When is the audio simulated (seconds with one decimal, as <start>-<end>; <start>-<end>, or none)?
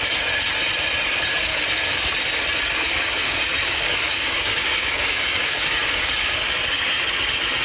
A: 1.5-2.1; 3.1-6.4